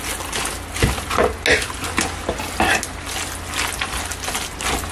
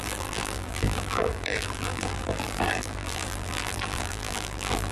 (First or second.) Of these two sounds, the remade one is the second